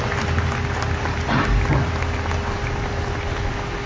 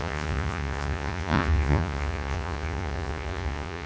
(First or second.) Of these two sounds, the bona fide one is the first